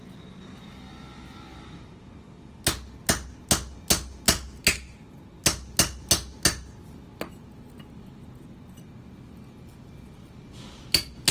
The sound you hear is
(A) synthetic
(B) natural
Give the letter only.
B